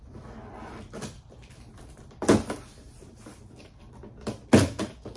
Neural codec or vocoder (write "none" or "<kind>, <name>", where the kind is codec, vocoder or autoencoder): vocoder, BigVGAN v2